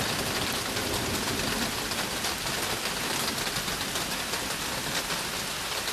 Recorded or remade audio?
recorded